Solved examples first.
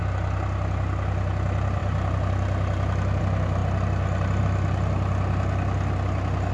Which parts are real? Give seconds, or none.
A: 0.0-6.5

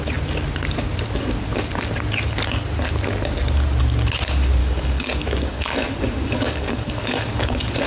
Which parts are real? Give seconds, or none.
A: 0.0-4.6

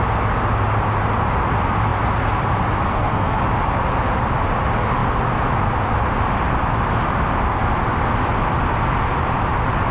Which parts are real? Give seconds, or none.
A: 0.0-2.9; 3.4-9.9

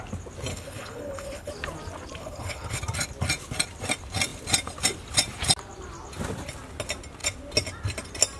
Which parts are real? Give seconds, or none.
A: 0.0-0.5; 1.5-2.2; 2.8-8.4

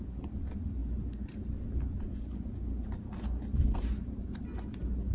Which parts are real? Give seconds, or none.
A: 0.0-5.1

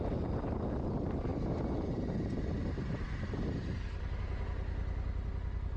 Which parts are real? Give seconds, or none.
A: 0.0-5.8

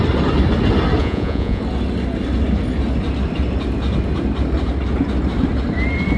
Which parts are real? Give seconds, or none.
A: 0.0-1.0; 1.6-6.2